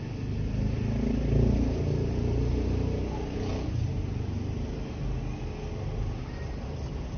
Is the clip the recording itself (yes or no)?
yes